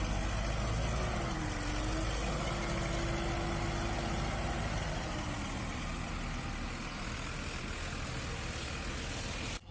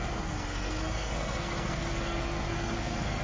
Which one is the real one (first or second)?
first